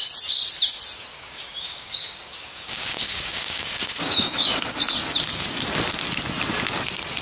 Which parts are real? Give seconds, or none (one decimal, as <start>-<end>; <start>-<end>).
0.0-1.0; 4.6-7.2